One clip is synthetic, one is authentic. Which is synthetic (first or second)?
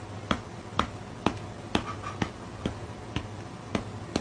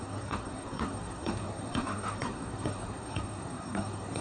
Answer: second